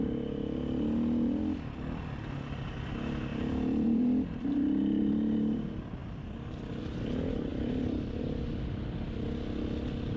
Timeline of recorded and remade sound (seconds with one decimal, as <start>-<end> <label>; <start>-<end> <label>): 0.0-3.3 recorded; 3.3-5.1 remade; 5.1-7.5 recorded; 7.5-8.2 remade; 8.2-10.2 recorded